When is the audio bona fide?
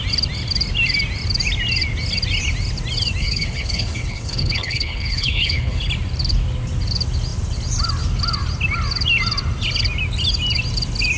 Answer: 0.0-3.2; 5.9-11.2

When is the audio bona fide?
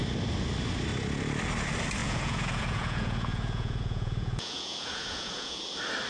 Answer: 0.0-2.0; 5.6-6.1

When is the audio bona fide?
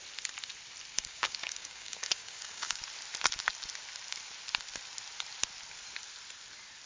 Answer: 0.0-0.9; 2.8-6.9